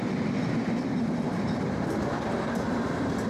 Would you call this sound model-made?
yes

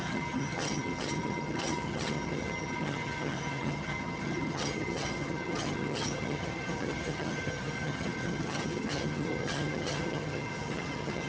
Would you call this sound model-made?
yes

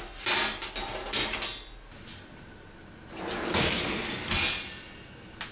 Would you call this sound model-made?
no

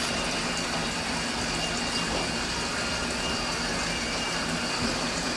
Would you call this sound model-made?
no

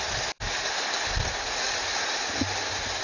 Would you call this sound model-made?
no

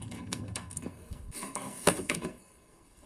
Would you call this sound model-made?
yes